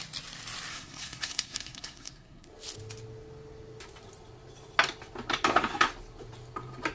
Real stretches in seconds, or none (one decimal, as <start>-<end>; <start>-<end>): 0.0-0.7; 2.5-6.9